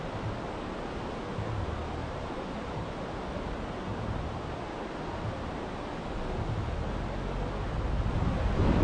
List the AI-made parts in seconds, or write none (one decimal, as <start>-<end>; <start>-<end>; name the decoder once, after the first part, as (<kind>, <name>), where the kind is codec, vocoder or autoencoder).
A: 2.0-3.0 (vocoder, BigVGAN v2); 3.9-4.5